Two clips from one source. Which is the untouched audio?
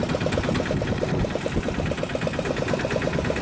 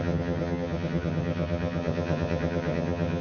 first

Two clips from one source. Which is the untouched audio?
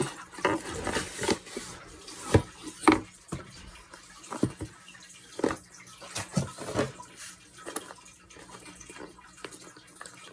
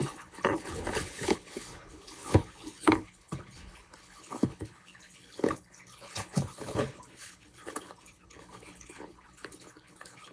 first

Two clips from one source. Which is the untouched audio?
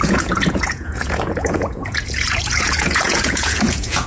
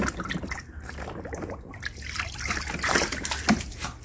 second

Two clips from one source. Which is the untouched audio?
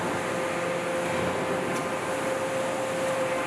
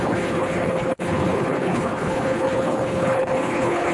first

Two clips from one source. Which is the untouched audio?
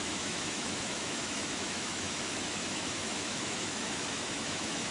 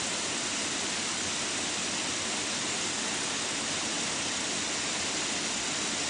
second